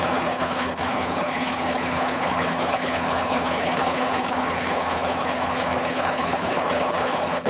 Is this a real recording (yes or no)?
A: no